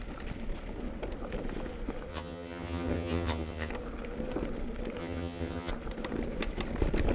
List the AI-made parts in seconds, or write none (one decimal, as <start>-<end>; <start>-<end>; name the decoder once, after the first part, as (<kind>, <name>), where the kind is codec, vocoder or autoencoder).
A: 2.1-3.7 (vocoder, HiFi-GAN); 5.0-5.7

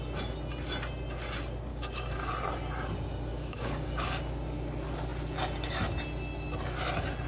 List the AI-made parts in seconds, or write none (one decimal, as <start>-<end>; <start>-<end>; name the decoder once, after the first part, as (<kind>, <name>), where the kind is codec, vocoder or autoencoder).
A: 1.7-2.3 (codec, DAC); 3.3-4.2

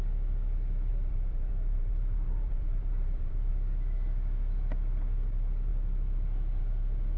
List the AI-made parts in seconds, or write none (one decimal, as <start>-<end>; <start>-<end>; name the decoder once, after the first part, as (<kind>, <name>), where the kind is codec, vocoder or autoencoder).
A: 0.9-3.5 (vocoder, BigVGAN v2)

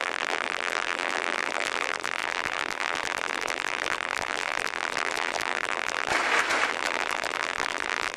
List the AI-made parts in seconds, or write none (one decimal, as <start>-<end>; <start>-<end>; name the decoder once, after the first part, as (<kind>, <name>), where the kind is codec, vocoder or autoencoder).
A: 0.0-6.1 (vocoder, BigVGAN v2); 6.7-8.2

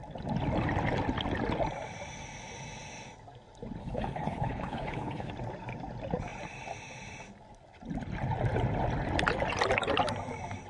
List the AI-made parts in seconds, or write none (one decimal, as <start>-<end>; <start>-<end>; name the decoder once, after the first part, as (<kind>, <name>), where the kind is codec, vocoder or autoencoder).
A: 3.8-5.3 (codec, HILCodec)

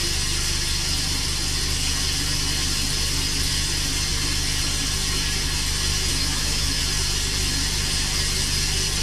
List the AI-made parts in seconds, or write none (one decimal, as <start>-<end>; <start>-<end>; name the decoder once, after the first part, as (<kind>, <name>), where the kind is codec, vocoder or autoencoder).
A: 6.1-6.8 (autoencoder, DAC-VAE)